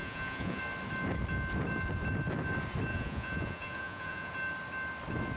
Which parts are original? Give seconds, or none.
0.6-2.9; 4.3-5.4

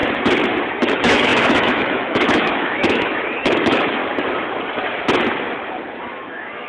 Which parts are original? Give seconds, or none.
0.0-0.7; 4.0-6.0

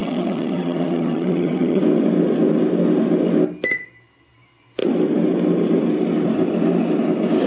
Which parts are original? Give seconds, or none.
1.8-7.5

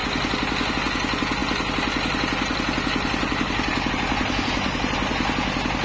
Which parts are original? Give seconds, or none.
0.0-5.8

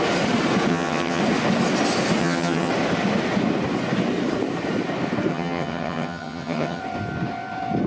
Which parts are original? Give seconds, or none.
0.0-0.7; 1.2-2.2; 2.7-5.3; 6.8-7.9

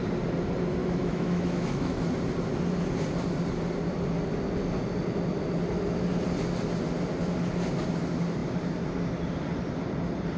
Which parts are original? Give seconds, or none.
0.0-0.8; 2.1-10.4

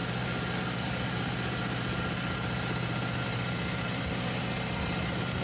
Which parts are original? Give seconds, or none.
0.0-5.4

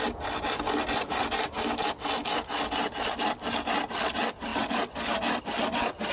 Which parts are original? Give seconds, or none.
0.0-6.1